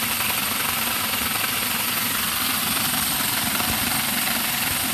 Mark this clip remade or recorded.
remade